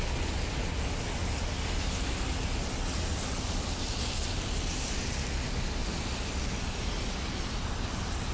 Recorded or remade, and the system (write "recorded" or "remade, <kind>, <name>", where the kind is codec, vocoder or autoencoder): recorded